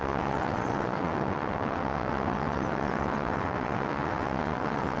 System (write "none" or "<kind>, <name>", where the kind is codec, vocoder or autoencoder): vocoder, WaveNeXt